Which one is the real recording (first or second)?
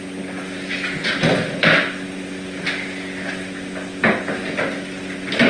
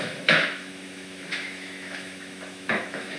first